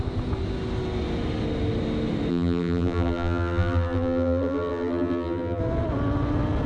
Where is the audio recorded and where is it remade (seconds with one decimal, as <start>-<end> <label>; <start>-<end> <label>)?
0.0-2.3 recorded; 2.3-5.6 remade; 5.6-6.7 recorded